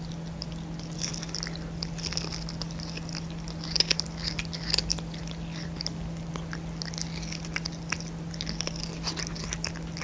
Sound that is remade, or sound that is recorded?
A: recorded